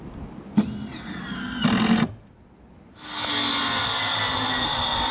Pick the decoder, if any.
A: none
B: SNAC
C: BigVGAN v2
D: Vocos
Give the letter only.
A